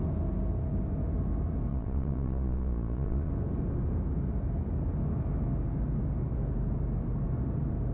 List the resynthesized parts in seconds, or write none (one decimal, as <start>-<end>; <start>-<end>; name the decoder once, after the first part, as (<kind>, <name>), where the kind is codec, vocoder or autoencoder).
1.7-3.3 (vocoder, Vocos)